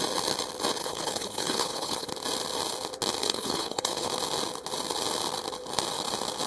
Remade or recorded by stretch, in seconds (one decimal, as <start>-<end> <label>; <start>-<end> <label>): 0.0-0.8 recorded; 0.8-2.1 remade; 2.1-3.2 recorded; 3.2-4.1 remade; 4.1-6.5 recorded